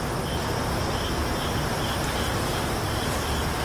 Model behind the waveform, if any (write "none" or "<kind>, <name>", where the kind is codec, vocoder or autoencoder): none